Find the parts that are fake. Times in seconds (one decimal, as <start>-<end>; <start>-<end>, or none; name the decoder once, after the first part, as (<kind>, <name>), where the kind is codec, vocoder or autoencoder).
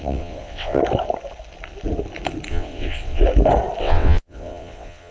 0.0-0.8 (vocoder, WaveNeXt); 2.5-3.2; 3.8-5.1